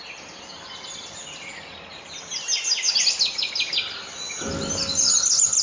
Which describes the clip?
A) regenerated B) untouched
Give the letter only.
B